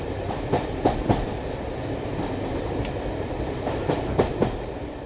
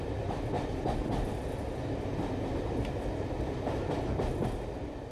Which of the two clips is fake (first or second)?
first